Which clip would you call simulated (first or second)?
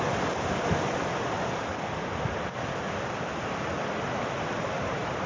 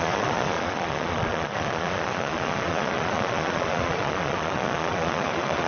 second